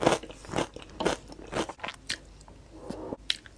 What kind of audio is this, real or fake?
real